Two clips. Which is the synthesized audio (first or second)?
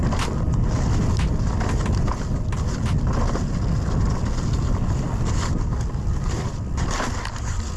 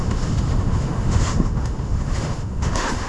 second